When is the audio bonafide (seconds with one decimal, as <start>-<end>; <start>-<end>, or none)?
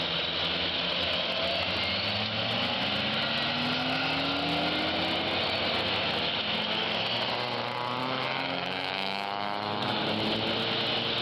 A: 0.0-8.0; 10.0-11.2